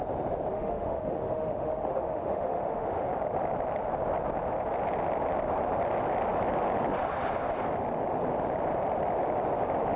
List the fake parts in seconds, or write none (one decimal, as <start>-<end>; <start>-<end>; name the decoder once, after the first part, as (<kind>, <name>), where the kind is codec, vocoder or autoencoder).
0.5-3.1 (autoencoder, DAC-VAE)